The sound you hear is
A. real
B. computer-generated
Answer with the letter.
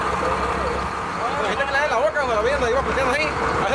A